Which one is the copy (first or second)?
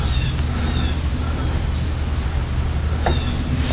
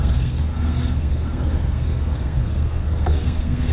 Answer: second